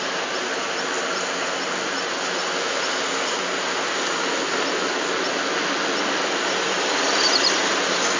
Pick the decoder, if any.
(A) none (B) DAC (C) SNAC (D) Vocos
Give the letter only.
A